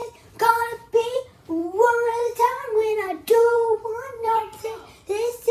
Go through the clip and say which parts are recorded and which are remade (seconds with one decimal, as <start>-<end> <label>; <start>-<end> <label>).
0.0-1.2 remade; 1.2-1.6 recorded; 1.6-4.4 remade; 4.4-5.5 recorded